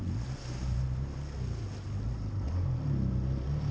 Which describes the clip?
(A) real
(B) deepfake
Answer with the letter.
A